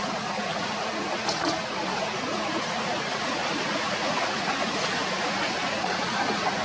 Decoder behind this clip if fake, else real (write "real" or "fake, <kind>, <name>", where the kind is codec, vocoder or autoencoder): fake, vocoder, Vocos